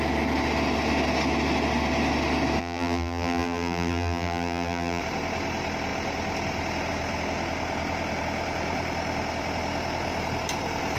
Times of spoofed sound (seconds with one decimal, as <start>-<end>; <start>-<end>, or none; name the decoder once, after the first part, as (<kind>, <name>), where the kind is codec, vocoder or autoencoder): 2.6-5.0 (vocoder, BigVGAN v2)